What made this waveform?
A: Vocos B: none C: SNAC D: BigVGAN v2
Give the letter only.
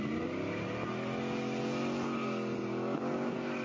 B